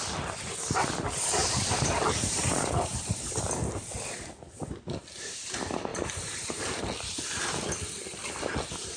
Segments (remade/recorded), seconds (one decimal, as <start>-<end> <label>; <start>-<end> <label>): 0.0-1.4 recorded; 1.4-3.4 remade; 3.4-5.9 recorded; 5.9-6.8 remade; 6.8-9.0 recorded